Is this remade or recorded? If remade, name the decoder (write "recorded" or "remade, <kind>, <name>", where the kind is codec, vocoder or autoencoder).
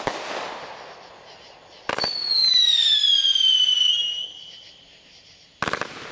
recorded